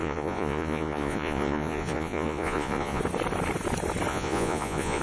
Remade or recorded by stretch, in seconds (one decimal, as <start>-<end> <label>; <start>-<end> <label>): 0.0-3.0 remade; 3.0-4.1 recorded; 4.1-5.0 remade